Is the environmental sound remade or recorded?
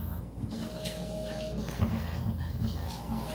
remade